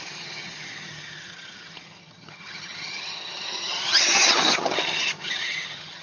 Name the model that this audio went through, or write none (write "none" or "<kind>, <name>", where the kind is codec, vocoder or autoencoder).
vocoder, HiFi-GAN